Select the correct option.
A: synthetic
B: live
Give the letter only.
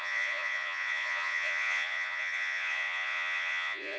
A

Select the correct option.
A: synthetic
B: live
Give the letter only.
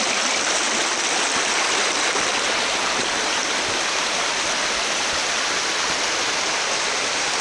B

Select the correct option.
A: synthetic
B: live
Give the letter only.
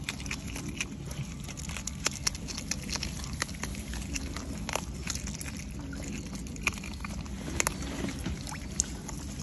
B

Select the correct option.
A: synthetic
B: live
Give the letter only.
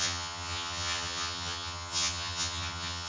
A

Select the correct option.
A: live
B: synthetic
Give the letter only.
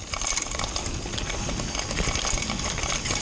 A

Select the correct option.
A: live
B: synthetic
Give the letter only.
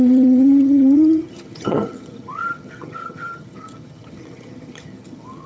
B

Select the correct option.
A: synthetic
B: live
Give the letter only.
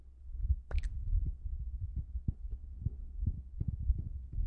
B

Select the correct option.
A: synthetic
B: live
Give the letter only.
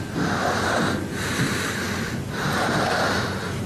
B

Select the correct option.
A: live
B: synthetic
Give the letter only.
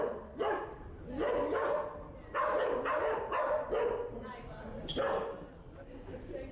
A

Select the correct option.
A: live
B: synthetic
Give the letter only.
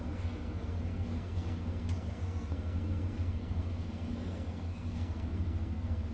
B